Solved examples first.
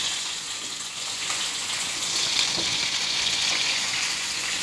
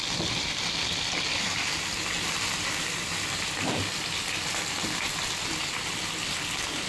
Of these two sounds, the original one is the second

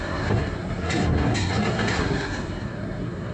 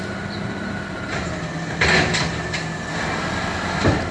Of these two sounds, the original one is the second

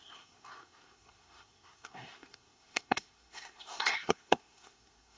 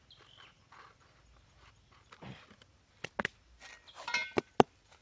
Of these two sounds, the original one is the second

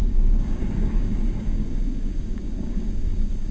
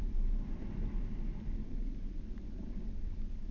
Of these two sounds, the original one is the second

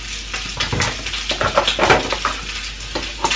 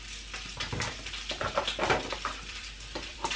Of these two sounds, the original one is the first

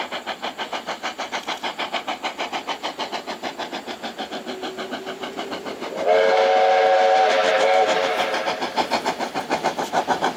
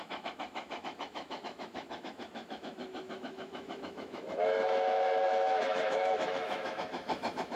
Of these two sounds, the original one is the first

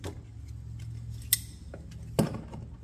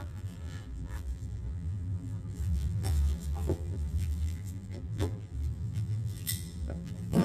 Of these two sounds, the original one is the first